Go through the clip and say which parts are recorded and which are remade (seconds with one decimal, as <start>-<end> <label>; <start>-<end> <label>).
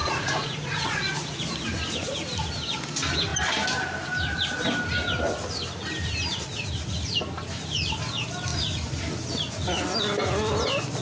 0.0-1.4 remade; 1.4-11.0 recorded